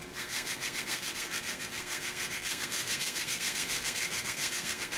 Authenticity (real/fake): fake